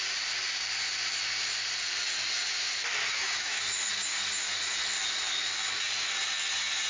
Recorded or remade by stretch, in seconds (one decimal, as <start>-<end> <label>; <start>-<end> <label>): 0.0-3.1 recorded; 3.1-3.6 remade; 3.6-6.9 recorded